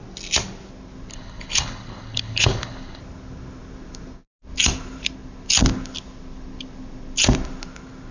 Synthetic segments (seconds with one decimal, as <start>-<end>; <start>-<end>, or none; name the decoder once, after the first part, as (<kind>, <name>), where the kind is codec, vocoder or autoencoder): 1.1-3.0 (codec, HILCodec)